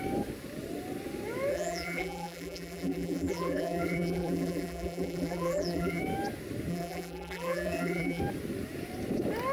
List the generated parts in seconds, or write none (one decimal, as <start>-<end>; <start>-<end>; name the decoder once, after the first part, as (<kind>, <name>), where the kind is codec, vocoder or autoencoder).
1.5-6.0 (vocoder, BigVGAN v2); 6.7-8.2